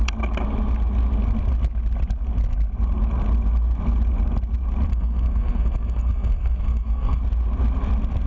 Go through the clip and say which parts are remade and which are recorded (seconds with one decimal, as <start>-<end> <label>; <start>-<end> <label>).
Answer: 0.0-4.9 recorded; 4.9-7.2 remade; 7.2-8.3 recorded